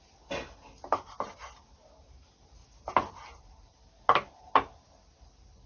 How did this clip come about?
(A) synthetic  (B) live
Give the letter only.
B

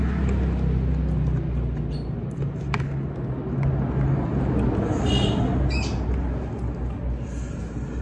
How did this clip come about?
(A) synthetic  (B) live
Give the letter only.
B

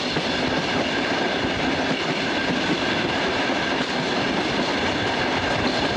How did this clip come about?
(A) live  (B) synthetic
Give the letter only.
B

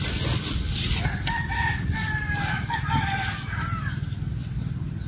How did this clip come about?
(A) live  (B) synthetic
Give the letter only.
A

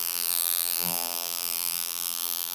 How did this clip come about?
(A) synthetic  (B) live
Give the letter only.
A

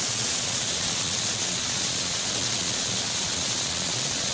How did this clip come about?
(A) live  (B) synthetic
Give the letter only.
B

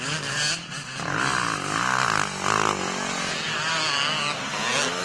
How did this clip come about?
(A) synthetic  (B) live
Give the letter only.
B